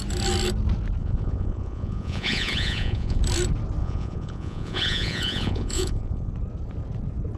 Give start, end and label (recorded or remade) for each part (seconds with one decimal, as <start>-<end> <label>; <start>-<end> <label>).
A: 0.0-1.0 recorded; 1.0-3.2 remade; 3.2-3.8 recorded; 3.8-6.3 remade; 6.3-7.4 recorded